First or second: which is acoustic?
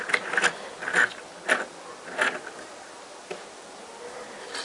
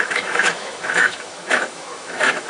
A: first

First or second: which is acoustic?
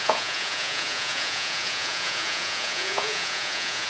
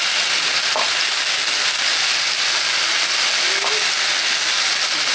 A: second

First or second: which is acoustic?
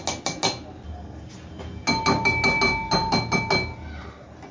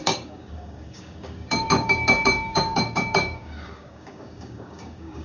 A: first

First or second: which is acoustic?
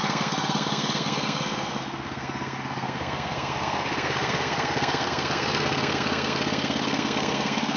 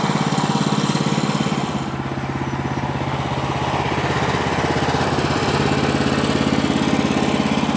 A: second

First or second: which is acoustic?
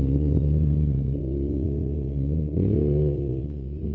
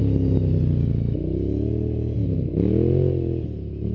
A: second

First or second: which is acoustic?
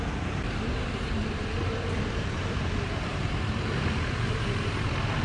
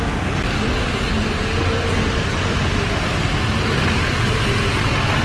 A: second